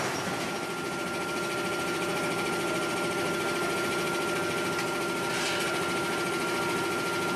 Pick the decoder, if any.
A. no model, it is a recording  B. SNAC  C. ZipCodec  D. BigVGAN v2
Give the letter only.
A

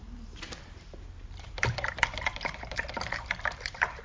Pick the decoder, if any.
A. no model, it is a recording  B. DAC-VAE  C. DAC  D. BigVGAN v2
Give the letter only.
D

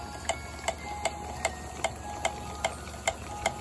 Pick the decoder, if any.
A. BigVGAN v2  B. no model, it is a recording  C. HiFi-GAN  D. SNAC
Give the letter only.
B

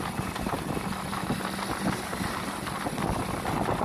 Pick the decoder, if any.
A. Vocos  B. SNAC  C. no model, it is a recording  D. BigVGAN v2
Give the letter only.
C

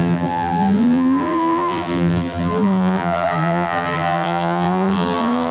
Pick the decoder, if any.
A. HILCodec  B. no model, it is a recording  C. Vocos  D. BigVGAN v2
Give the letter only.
D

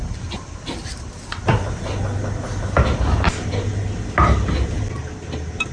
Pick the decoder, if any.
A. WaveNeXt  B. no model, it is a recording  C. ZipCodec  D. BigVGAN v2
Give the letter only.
B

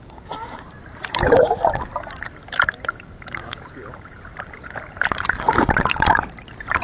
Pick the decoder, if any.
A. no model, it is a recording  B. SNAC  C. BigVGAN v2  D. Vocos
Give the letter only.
C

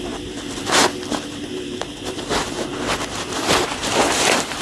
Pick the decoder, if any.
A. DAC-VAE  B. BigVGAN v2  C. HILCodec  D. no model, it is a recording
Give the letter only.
B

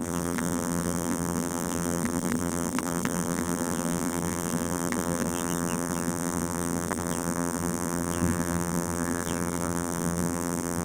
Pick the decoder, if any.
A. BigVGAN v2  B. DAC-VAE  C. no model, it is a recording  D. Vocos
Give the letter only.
A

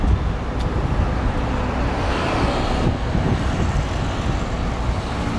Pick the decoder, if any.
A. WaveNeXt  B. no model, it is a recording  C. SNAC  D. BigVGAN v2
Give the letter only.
B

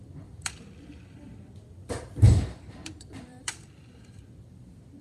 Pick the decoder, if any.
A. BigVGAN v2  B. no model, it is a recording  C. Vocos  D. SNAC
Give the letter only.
A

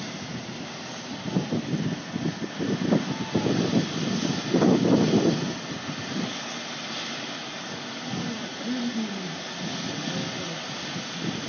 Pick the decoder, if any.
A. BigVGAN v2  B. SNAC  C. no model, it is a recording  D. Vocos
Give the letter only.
C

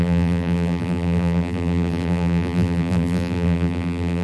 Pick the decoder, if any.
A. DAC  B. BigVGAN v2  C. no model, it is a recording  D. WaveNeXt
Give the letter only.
B